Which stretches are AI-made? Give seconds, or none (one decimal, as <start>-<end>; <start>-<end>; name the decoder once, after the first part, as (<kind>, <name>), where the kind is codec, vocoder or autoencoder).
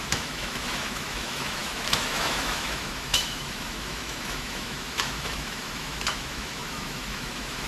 0.0-7.7 (autoencoder, DAC-VAE)